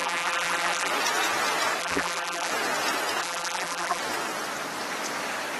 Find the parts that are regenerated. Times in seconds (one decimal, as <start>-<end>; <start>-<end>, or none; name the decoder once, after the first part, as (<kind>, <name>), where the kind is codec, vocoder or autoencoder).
0.0-0.9 (vocoder, BigVGAN v2); 1.8-2.5; 3.2-4.0

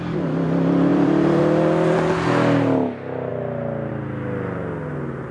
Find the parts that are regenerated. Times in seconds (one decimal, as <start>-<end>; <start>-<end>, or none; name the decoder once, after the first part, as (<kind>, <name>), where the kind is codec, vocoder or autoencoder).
0.9-1.4 (vocoder, BigVGAN v2)

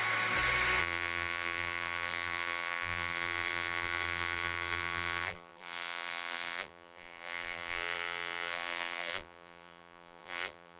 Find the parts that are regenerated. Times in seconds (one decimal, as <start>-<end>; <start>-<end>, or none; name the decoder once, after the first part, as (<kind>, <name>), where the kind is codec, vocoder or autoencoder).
0.8-10.8 (vocoder, BigVGAN v2)

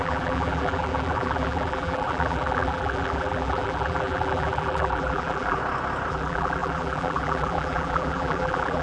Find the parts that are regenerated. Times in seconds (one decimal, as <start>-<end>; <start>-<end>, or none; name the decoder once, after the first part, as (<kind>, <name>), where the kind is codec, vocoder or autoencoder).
0.0-5.6 (vocoder, BigVGAN v2); 6.1-8.8

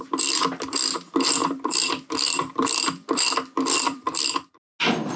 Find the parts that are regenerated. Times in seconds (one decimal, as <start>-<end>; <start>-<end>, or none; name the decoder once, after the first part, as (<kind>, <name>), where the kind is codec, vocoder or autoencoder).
1.4-4.5 (vocoder, BigVGAN v2)